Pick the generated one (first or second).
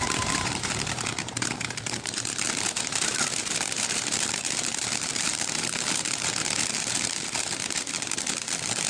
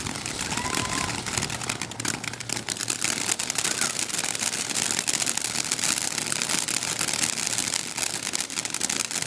first